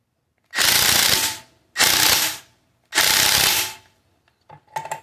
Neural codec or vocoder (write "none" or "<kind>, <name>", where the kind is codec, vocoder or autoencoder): none